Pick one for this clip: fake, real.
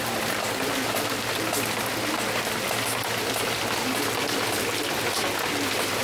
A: real